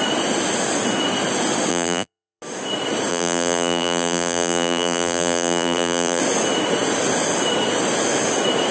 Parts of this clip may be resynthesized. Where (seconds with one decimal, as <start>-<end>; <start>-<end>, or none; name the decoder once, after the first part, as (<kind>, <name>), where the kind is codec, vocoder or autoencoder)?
1.7-2.4 (vocoder, BigVGAN v2); 3.1-6.2